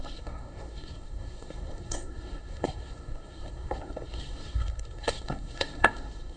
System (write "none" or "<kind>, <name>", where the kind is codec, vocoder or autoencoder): codec, SNAC